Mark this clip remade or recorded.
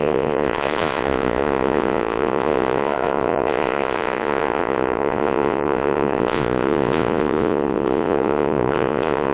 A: remade